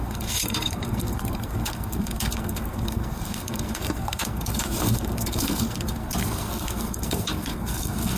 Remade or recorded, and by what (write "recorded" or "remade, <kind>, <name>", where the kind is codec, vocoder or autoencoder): remade, codec, SNAC